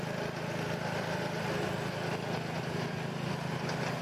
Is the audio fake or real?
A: real